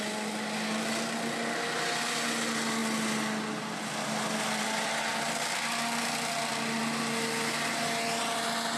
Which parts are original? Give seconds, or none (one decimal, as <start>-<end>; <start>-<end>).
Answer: 0.0-8.8